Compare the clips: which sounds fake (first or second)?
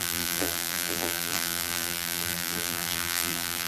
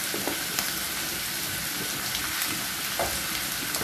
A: first